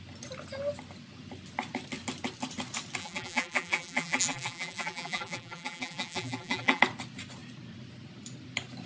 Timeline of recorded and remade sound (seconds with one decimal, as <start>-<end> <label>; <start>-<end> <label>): 0.0-3.0 recorded; 3.0-6.8 remade; 6.8-8.9 recorded